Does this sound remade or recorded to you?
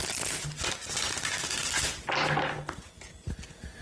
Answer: recorded